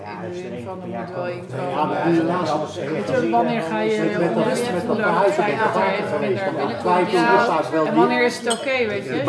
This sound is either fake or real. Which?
real